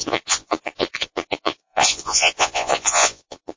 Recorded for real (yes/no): no